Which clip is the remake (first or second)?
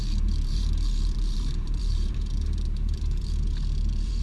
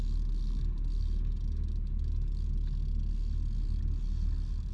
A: first